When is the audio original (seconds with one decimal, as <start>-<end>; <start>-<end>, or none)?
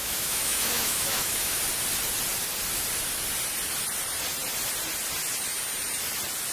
1.6-6.5